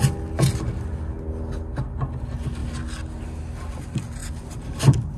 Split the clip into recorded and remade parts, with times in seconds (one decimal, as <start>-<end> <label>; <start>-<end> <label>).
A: 0.0-5.2 recorded